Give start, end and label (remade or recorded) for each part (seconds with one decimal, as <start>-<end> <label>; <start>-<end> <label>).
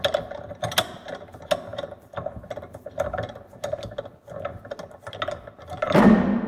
0.0-6.5 recorded